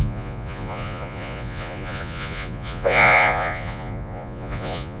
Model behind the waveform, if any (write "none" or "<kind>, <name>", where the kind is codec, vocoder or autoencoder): vocoder, Vocos